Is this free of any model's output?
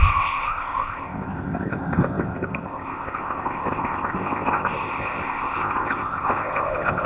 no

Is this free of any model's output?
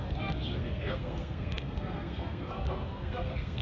no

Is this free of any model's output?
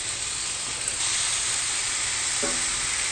yes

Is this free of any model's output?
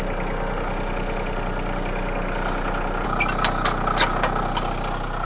yes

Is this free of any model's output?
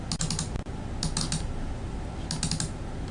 yes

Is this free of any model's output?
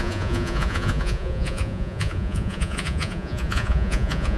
no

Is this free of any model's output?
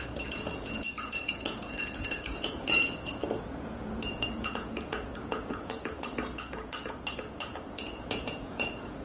no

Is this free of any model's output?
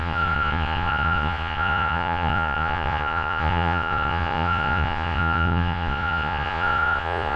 no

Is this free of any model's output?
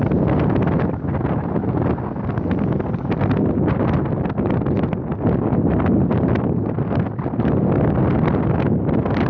yes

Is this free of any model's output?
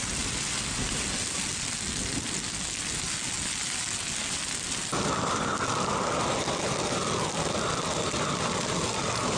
yes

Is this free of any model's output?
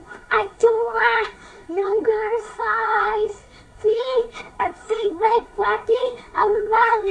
no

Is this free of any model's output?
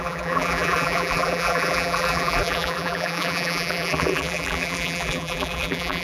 no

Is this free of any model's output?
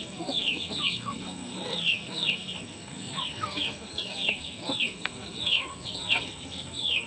no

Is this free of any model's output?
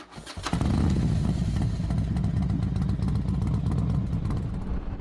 yes